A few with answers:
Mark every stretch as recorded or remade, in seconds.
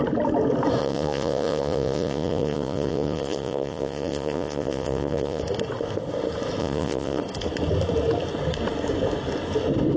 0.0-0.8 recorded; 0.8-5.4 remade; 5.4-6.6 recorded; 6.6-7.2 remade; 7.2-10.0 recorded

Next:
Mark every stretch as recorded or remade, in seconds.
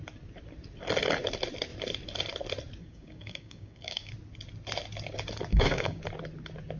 0.0-2.8 recorded; 2.8-4.1 remade; 4.1-5.5 recorded; 5.5-6.0 remade; 6.0-6.8 recorded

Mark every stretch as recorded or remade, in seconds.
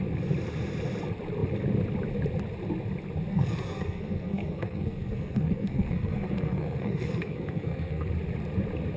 0.0-3.3 recorded; 3.3-8.1 remade; 8.1-9.0 recorded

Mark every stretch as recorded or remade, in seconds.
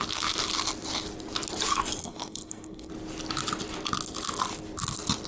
0.0-2.0 recorded; 2.0-2.9 remade; 2.9-5.3 recorded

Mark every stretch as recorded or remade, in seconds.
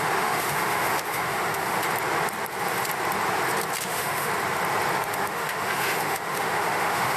0.0-1.8 remade; 1.8-3.8 recorded; 3.8-4.3 remade; 4.3-5.0 recorded; 5.0-7.2 remade